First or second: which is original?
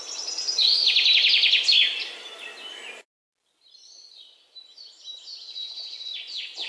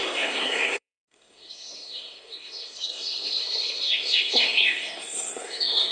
first